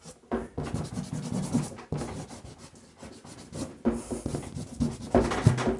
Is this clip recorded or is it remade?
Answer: recorded